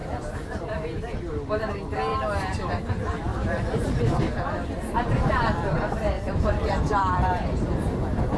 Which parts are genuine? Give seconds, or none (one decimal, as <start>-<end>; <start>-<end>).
0.0-3.3